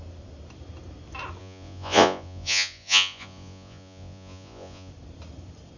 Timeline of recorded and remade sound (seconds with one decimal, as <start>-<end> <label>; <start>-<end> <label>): 0.0-1.4 recorded; 1.4-4.9 remade; 4.9-5.8 recorded